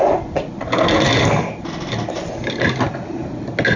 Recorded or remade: recorded